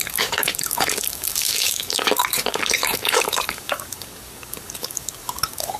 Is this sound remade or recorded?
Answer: remade